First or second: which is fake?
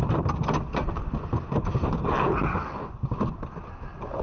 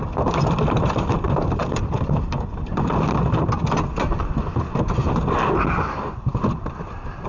second